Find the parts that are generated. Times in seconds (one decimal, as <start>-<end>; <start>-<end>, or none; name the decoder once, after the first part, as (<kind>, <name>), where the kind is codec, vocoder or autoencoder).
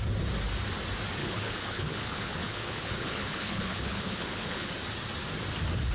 1.2-4.7 (codec, HILCodec)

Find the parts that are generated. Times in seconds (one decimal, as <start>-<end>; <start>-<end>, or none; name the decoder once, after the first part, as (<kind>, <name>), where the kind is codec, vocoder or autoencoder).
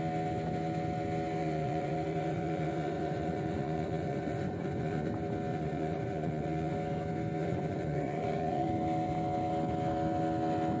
1.4-5.1 (vocoder, Vocos); 5.5-6.7; 7.4-8.7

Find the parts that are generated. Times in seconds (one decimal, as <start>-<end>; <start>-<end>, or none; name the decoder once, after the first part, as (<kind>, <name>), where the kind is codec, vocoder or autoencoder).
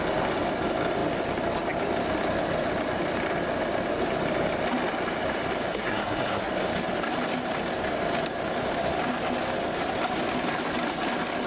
5.7-6.5 (codec, SNAC)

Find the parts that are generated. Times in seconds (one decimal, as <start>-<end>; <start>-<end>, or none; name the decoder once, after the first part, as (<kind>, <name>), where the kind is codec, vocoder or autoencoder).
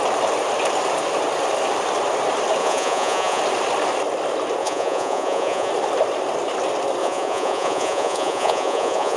2.6-3.4 (vocoder, Vocos); 4.6-5.7; 7.0-9.2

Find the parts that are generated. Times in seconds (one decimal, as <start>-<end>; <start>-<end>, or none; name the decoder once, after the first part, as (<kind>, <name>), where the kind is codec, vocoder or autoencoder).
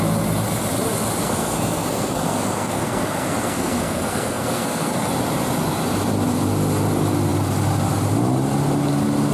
1.2-5.1 (codec, SNAC)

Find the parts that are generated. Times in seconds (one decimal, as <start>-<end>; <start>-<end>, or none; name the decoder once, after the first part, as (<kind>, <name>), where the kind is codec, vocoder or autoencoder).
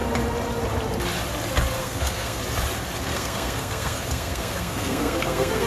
1.8-2.4 (codec, SNAC); 3.1-5.7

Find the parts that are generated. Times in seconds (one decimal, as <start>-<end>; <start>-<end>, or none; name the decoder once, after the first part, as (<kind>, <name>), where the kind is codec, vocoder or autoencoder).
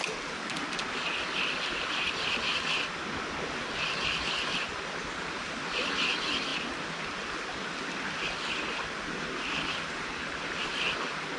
none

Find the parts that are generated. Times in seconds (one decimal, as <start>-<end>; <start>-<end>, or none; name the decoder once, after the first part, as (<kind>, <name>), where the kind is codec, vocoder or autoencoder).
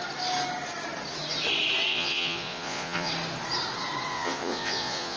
1.9-3.1 (vocoder, Vocos); 4.1-5.2